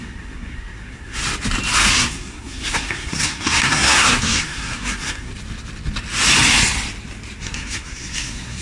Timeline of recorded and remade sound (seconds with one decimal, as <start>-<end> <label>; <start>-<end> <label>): 0.0-1.2 remade; 1.2-1.9 recorded; 1.9-5.3 remade; 5.3-7.4 recorded; 7.4-8.6 remade

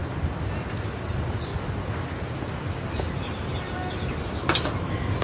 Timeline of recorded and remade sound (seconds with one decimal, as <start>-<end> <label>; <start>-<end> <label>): 0.0-1.1 recorded; 1.1-1.5 remade; 1.5-4.6 recorded; 4.6-5.2 remade